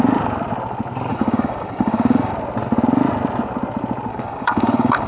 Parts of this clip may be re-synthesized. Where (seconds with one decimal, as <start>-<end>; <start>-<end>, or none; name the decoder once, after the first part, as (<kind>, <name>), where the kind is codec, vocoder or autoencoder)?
1.1-2.3 (codec, DAC); 4.1-5.1